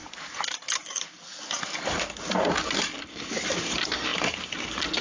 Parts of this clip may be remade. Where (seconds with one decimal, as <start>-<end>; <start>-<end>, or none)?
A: none